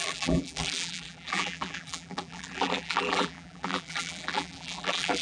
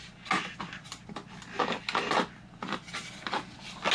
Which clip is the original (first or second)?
second